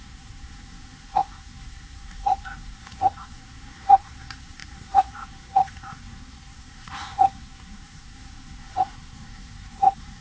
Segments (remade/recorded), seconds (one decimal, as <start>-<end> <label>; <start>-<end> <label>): 0.0-10.2 remade